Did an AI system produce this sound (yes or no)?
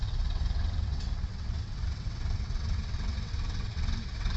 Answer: yes